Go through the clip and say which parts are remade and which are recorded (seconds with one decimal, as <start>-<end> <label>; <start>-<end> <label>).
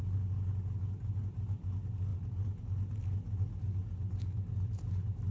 0.0-2.1 recorded; 2.1-2.6 remade; 2.6-5.3 recorded